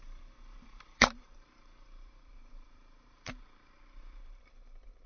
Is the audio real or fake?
fake